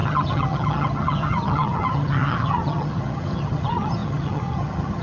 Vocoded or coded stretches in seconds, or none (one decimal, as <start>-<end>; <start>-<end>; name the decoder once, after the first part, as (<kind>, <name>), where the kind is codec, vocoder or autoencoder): 0.0-5.0 (vocoder, HiFi-GAN)